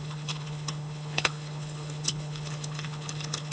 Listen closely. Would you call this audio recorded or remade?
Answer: remade